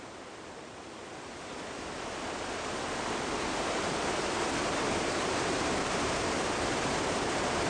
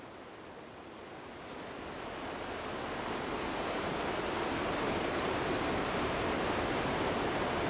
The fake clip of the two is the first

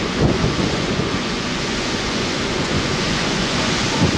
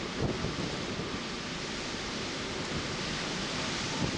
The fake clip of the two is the first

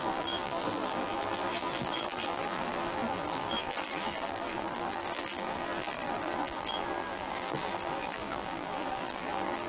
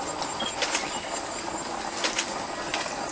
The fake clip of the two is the first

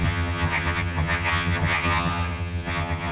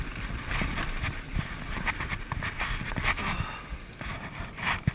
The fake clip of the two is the first